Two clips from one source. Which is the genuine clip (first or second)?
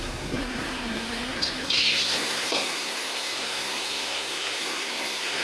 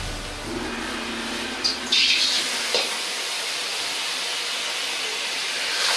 second